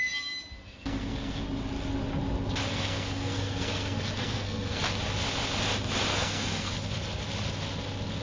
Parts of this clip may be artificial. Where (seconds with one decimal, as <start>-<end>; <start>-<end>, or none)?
0.7-1.4; 2.7-4.8; 6.1-6.7